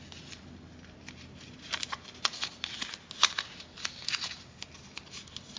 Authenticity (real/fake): real